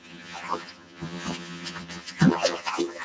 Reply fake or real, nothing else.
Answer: fake